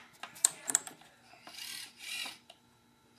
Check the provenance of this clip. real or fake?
real